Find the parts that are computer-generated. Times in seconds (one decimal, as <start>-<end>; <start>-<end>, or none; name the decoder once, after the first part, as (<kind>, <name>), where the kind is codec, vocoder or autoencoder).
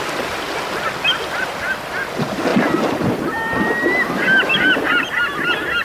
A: none